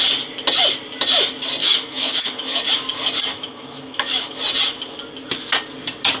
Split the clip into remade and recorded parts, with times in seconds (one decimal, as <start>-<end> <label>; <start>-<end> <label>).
0.0-1.6 recorded; 1.6-2.6 remade; 2.6-3.3 recorded; 3.3-4.4 remade; 4.4-6.2 recorded